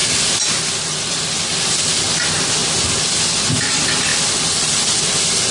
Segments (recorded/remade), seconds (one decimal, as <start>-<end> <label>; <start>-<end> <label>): 0.0-5.5 recorded